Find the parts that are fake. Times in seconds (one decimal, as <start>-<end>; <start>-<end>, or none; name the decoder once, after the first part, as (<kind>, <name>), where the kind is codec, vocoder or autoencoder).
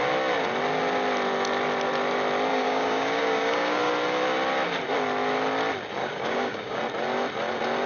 2.5-3.9 (codec, DAC); 6.0-6.8